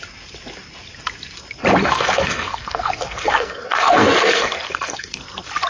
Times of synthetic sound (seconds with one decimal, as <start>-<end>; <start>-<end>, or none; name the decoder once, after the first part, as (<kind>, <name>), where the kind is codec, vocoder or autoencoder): 1.8-5.2 (codec, SNAC)